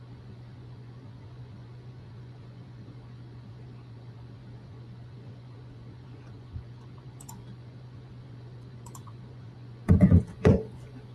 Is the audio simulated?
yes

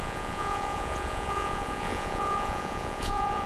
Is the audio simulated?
yes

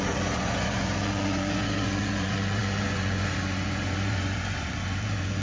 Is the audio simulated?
yes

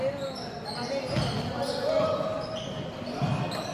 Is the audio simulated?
no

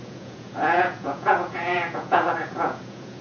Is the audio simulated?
yes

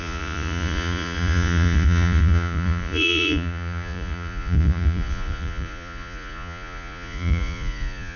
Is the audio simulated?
yes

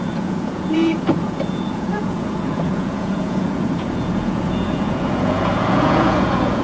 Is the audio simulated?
yes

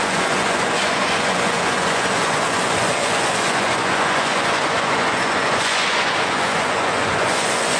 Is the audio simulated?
yes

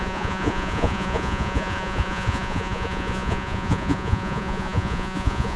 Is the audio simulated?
yes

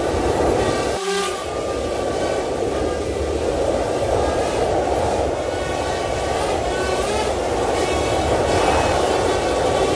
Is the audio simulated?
no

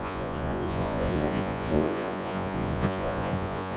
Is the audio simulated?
yes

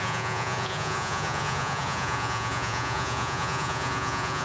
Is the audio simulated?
yes